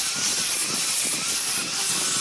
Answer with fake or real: real